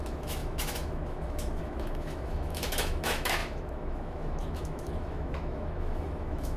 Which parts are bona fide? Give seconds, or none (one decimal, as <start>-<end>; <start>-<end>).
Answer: none